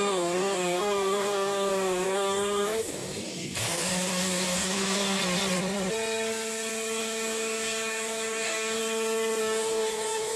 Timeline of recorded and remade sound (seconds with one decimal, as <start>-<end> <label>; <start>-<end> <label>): 0.0-5.2 remade; 5.2-7.0 recorded; 7.0-8.8 remade; 8.8-9.4 recorded; 9.4-10.4 remade